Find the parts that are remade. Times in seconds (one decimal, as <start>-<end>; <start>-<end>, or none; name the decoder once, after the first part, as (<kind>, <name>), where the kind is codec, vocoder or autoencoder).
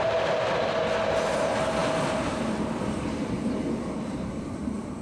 none